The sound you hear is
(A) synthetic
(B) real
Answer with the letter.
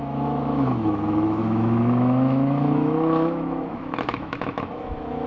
A